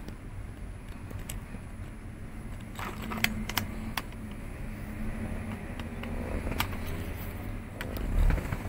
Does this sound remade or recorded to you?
recorded